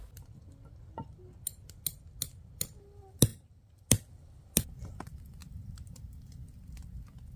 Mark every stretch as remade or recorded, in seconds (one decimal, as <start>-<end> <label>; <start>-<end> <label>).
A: 0.0-3.3 recorded; 3.3-3.9 remade; 3.9-5.4 recorded; 5.4-6.4 remade; 6.4-7.4 recorded